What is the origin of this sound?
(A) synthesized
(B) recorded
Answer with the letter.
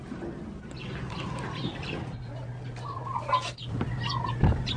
B